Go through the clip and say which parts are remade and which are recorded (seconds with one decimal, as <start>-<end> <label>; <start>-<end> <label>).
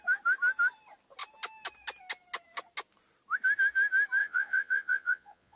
0.0-4.2 recorded; 4.2-5.6 remade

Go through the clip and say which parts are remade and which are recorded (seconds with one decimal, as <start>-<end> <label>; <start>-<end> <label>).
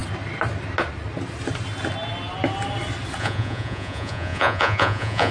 0.0-3.2 recorded; 3.2-5.3 remade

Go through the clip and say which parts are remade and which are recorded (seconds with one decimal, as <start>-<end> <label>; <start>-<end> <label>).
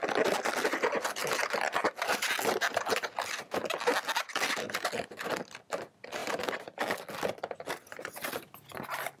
0.0-1.2 recorded; 1.2-5.7 remade; 5.7-6.2 recorded; 6.2-7.4 remade; 7.4-9.2 recorded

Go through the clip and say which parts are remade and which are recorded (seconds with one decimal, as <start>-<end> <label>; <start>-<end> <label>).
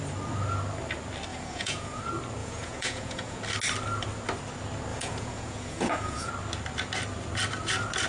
0.0-1.3 recorded; 1.3-2.0 remade; 2.0-2.4 recorded; 2.4-3.4 remade; 3.4-4.9 recorded; 4.9-6.3 remade; 6.3-8.1 recorded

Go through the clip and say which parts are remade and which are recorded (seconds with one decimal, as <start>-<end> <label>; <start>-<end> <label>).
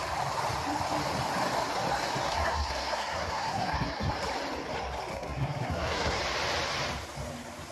0.0-2.2 recorded; 2.2-4.1 remade; 4.1-5.1 recorded; 5.1-6.2 remade; 6.2-7.7 recorded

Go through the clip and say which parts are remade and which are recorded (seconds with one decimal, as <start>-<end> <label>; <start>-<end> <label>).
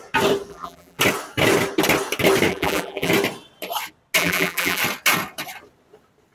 0.0-0.5 recorded; 0.5-1.0 remade; 1.0-2.5 recorded; 2.5-3.1 remade; 3.1-4.2 recorded; 4.2-4.8 remade; 4.8-6.3 recorded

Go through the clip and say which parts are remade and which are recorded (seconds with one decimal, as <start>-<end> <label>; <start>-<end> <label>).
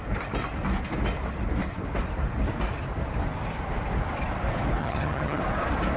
0.0-4.8 recorded; 4.8-5.4 remade; 5.4-6.0 recorded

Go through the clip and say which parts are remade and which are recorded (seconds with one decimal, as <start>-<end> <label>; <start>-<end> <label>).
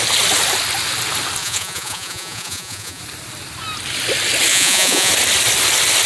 0.0-1.4 recorded; 1.4-3.0 remade; 3.0-4.5 recorded; 4.5-5.1 remade; 5.1-6.1 recorded